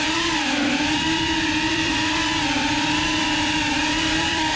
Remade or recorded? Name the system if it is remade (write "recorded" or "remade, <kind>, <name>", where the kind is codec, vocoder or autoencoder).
remade, vocoder, BigVGAN v2